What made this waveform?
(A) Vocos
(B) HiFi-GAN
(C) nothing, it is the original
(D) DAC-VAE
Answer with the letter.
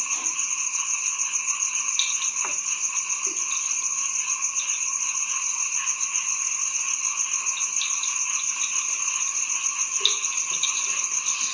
C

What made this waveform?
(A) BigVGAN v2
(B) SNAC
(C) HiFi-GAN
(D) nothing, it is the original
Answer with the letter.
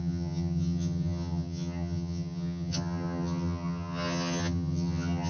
C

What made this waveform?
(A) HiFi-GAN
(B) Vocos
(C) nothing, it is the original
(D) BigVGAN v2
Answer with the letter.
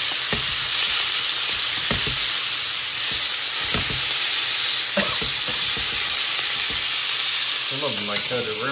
C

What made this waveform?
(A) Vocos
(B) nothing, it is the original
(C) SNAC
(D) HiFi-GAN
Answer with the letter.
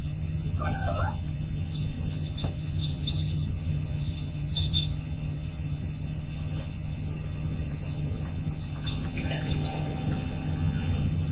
D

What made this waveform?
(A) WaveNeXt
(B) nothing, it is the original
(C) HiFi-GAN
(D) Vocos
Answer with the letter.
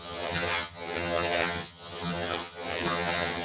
C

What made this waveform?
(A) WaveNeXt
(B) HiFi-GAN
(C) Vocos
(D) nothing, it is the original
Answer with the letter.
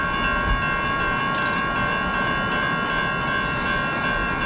D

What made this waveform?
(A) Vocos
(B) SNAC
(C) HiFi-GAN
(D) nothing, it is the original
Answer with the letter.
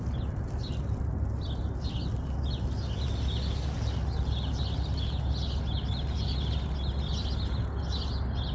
D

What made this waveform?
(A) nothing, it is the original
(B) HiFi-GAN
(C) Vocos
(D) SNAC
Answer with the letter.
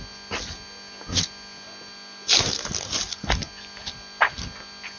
A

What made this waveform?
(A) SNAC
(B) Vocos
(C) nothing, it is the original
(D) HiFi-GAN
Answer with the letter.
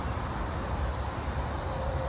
C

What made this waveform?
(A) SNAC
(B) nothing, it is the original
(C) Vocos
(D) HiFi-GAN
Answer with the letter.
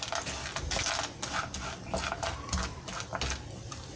B